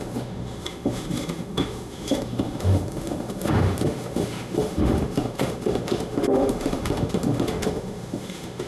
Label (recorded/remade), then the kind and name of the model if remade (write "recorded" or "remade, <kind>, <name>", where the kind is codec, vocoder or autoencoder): remade, autoencoder, DAC-VAE